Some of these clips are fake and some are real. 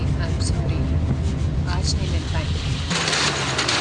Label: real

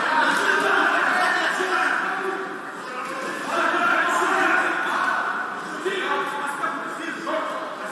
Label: real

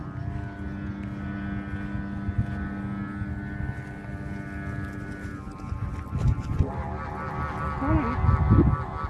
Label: real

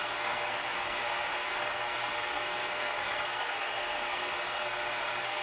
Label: fake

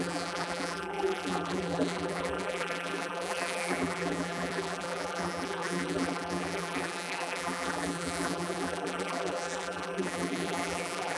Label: fake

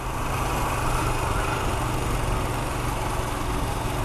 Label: real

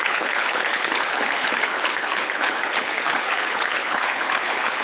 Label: fake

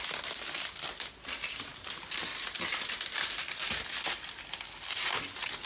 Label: real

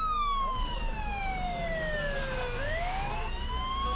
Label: fake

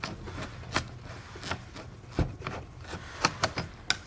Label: real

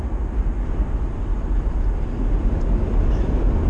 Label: real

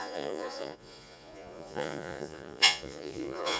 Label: fake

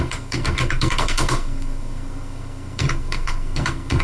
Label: fake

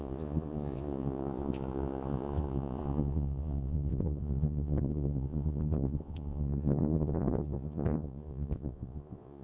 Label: fake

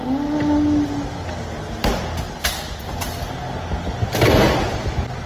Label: real